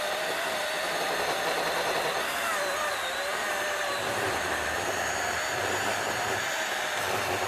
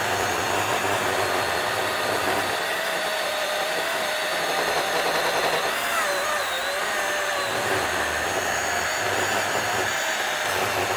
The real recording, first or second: second